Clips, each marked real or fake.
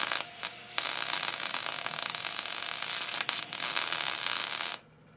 real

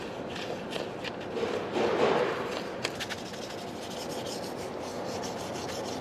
real